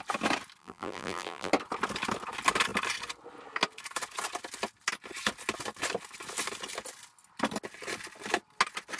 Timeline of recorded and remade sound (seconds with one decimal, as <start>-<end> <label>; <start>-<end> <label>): 0.0-0.6 recorded; 0.6-1.5 remade; 1.5-9.0 recorded